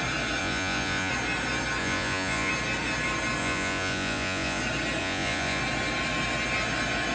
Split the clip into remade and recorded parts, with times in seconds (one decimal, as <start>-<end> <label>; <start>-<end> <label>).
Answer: 0.0-0.4 recorded; 0.4-1.1 remade; 1.1-1.8 recorded; 1.8-2.5 remade; 2.5-3.4 recorded; 3.4-4.6 remade; 4.6-5.0 recorded; 5.0-5.6 remade; 5.6-7.1 recorded